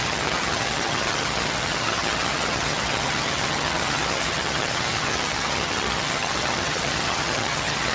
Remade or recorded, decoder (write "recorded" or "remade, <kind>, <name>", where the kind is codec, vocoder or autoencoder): remade, vocoder, HiFi-GAN